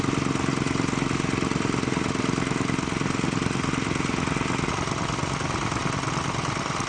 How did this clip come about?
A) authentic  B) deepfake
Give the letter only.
A